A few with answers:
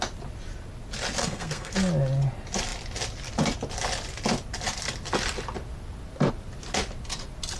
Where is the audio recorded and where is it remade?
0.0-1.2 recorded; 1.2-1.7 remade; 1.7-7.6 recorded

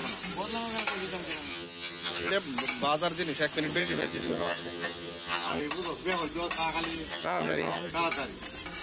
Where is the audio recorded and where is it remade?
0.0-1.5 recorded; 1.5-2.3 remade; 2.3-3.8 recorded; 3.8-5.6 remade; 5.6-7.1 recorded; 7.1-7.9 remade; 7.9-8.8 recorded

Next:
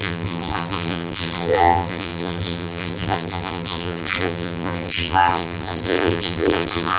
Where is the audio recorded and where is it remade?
0.0-7.0 remade

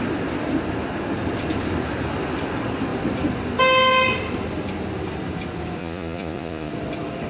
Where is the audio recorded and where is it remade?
0.0-5.8 recorded; 5.8-6.7 remade; 6.7-7.3 recorded